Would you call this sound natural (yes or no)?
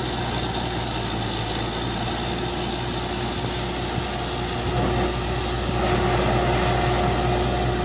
yes